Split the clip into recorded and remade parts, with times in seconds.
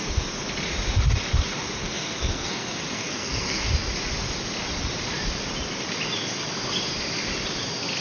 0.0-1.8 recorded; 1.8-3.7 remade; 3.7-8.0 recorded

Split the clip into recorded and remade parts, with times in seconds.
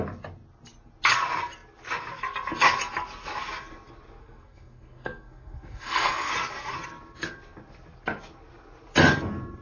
0.0-4.2 recorded; 4.2-6.3 remade; 6.3-9.6 recorded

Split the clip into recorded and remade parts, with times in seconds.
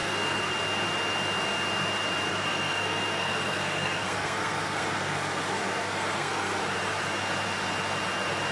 0.0-0.5 remade; 0.5-2.3 recorded; 2.3-6.6 remade; 6.6-8.5 recorded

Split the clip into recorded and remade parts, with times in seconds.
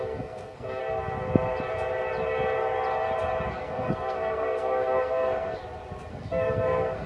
0.0-0.8 remade; 0.8-3.5 recorded; 3.5-5.6 remade; 5.6-6.1 recorded; 6.1-7.1 remade